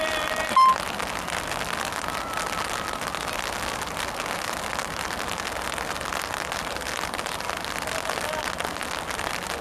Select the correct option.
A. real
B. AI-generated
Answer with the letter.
A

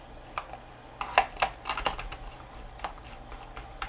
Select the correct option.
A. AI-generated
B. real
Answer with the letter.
B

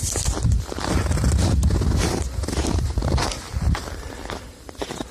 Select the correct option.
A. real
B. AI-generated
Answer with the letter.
A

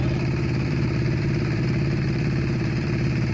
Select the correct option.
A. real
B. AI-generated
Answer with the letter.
B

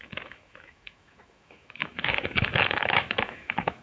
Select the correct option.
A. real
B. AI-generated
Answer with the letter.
B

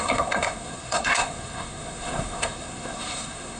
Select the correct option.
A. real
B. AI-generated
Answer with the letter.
B